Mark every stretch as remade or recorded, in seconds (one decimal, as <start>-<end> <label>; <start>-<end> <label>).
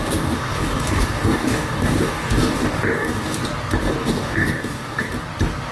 0.0-3.4 remade; 3.4-4.0 recorded; 4.0-5.1 remade; 5.1-5.7 recorded